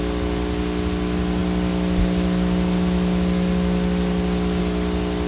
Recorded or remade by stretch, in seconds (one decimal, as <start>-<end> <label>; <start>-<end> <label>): 0.0-5.3 recorded